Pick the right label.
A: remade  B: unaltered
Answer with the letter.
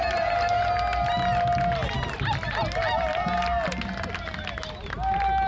B